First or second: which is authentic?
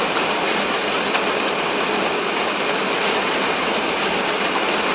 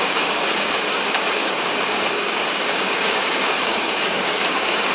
first